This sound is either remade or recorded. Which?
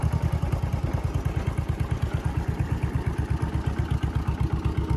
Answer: recorded